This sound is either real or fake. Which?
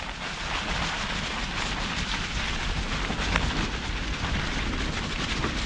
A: real